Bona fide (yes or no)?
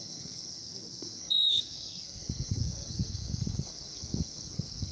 no